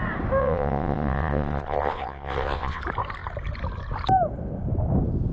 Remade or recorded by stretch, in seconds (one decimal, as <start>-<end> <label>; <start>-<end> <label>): 0.0-0.4 recorded; 0.4-2.8 remade; 2.8-5.3 recorded